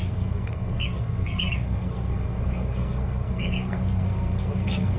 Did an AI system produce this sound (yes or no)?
yes